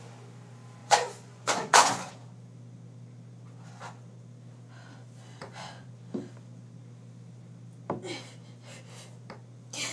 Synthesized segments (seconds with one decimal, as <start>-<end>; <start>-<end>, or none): 0.8-2.1; 5.4-5.9